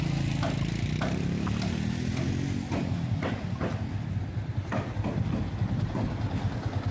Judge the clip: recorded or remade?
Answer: recorded